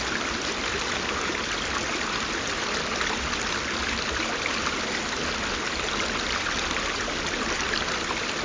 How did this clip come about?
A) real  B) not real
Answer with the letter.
A